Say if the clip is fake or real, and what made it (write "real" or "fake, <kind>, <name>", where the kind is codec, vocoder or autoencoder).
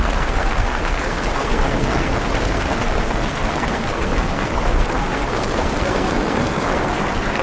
fake, codec, SNAC